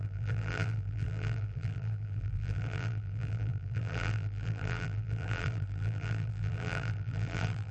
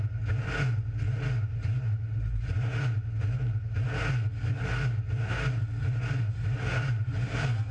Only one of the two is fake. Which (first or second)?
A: first